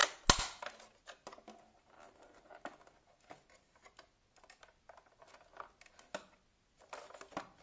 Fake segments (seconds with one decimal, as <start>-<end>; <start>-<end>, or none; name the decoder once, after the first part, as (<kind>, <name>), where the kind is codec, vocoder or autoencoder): none